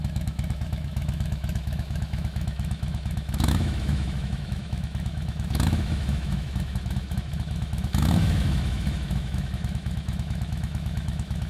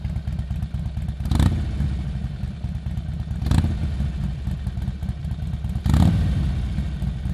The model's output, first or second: first